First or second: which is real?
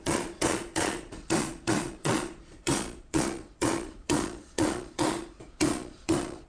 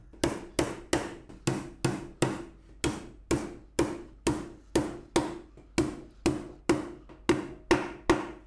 second